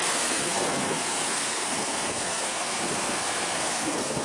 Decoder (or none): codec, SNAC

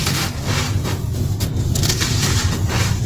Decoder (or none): none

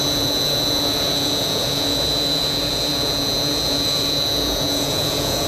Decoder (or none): vocoder, Vocos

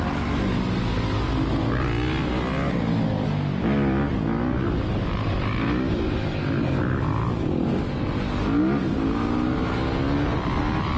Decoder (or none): none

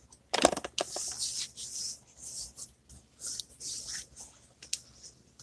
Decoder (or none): none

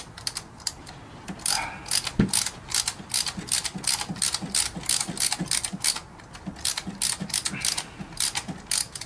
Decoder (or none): none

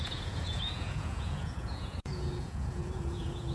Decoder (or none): vocoder, Vocos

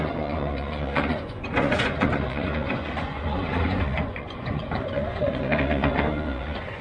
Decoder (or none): vocoder, Vocos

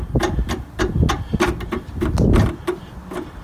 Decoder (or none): none